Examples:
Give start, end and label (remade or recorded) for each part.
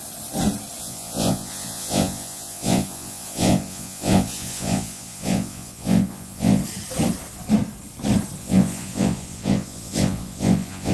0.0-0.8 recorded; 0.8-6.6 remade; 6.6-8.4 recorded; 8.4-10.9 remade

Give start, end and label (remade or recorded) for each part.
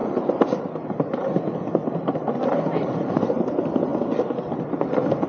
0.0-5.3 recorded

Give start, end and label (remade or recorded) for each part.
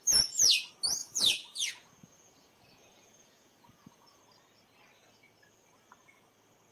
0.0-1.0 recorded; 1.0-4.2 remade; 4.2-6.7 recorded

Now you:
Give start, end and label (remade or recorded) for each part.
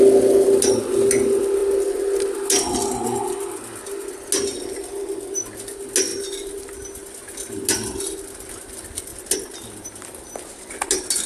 0.0-11.3 recorded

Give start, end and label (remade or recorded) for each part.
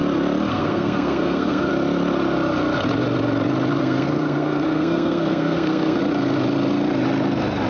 0.0-0.5 recorded; 0.5-1.7 remade; 1.7-3.8 recorded; 3.8-6.0 remade; 6.0-7.7 recorded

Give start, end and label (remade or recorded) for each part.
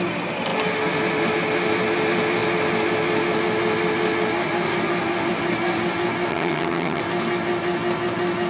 0.0-6.3 recorded; 6.3-7.0 remade; 7.0-8.5 recorded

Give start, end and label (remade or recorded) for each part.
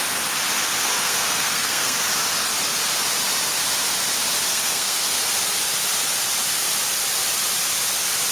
0.0-0.8 recorded; 0.8-2.0 remade; 2.0-4.5 recorded; 4.5-5.2 remade; 5.2-8.3 recorded